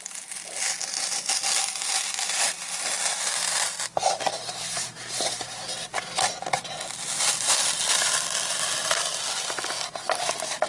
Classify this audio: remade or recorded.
recorded